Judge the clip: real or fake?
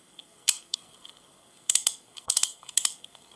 fake